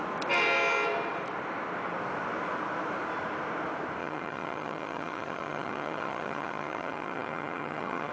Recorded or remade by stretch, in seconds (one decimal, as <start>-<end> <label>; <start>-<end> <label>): 0.0-4.0 recorded; 4.0-8.1 remade